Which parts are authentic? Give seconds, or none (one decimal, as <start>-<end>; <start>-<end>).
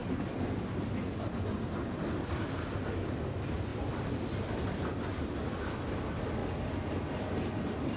1.1-3.7; 5.9-6.4; 7.0-8.0